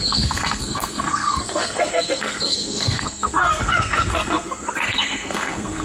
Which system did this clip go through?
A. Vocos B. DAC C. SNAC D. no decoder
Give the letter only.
C